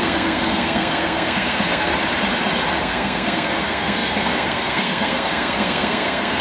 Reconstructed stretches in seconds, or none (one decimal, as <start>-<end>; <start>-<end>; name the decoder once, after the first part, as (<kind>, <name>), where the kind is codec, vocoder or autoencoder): 0.0-1.9 (codec, SNAC); 2.8-6.4